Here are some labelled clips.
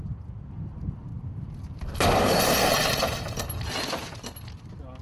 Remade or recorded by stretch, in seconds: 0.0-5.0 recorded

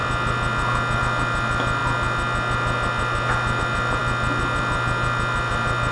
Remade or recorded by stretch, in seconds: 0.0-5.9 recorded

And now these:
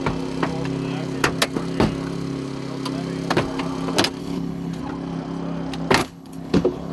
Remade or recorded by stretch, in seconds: 0.0-4.2 recorded; 4.2-4.8 remade; 4.8-6.0 recorded; 6.0-6.9 remade